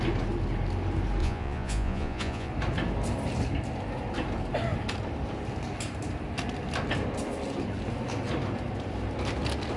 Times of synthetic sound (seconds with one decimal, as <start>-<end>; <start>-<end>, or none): 1.2-2.5